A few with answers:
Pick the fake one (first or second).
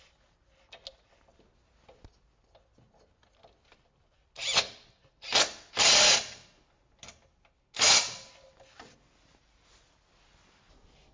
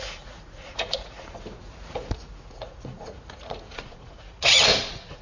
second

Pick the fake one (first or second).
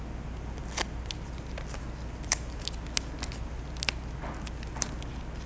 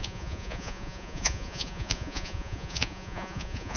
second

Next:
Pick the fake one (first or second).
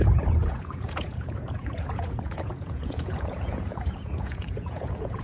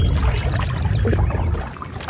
first